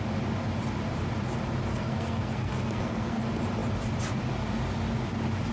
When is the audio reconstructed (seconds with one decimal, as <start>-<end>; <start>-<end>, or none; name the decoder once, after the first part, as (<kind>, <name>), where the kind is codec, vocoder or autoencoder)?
1.7-3.2 (codec, SNAC)